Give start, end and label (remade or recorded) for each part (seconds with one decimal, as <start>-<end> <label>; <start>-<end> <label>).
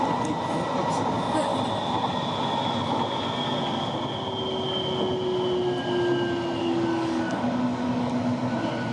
0.0-6.6 recorded; 6.6-8.1 remade; 8.1-8.9 recorded